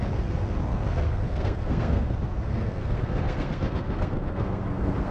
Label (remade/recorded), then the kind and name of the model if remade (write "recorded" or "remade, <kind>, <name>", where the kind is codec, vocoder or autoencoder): remade, codec, SNAC